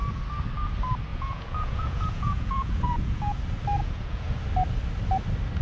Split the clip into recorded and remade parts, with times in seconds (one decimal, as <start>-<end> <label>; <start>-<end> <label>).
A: 0.0-1.1 recorded; 1.1-3.4 remade; 3.4-3.8 recorded; 3.8-4.4 remade; 4.4-5.6 recorded